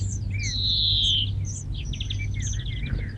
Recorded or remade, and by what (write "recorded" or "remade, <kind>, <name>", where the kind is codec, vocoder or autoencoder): recorded